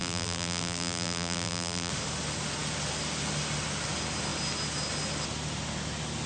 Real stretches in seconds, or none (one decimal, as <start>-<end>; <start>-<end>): 1.9-6.3